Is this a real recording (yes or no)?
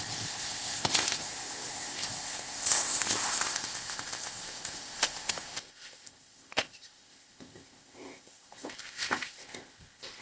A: no